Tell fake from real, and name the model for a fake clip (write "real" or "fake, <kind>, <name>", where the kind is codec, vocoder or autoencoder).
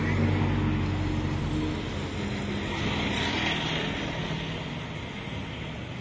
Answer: real